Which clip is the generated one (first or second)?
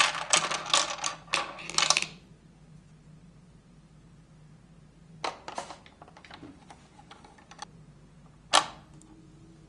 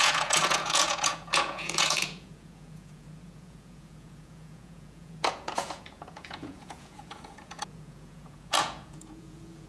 second